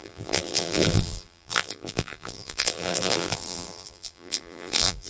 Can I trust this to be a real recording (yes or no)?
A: no